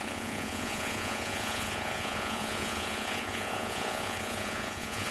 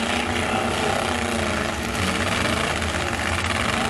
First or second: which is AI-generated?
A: first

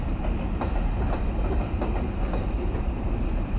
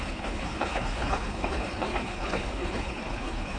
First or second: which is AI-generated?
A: second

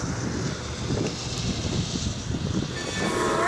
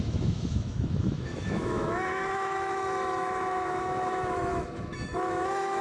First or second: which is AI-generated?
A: second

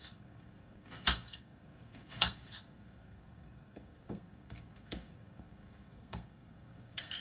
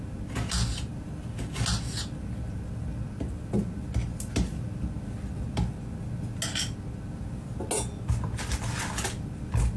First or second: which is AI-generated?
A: first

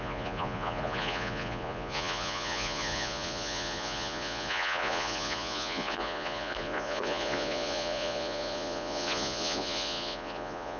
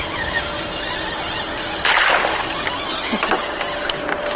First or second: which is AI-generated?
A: first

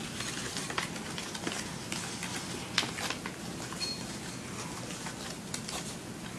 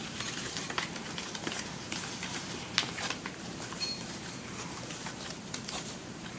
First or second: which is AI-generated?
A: second